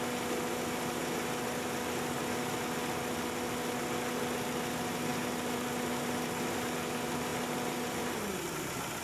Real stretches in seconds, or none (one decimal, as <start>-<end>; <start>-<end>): 0.0-9.0